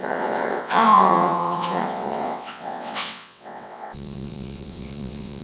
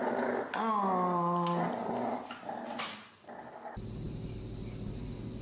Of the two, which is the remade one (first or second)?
first